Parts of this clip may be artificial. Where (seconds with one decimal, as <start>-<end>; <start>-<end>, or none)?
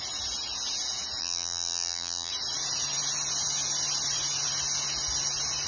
1.2-2.3